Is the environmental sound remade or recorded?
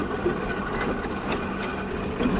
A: recorded